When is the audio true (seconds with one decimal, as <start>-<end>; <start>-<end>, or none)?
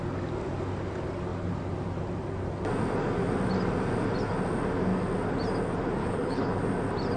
0.0-6.0; 6.6-7.2